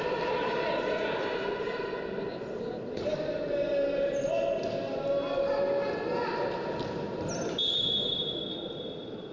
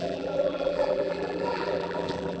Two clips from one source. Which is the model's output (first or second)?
second